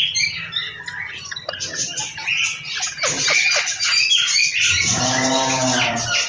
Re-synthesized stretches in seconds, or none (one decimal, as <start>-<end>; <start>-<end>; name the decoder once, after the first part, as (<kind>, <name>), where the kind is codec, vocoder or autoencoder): none